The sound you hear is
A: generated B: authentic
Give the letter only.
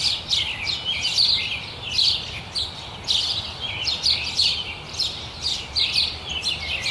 B